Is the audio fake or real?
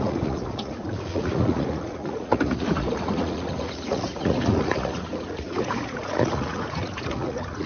fake